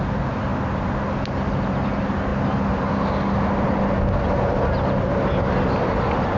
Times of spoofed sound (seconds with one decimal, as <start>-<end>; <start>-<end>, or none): 2.3-6.4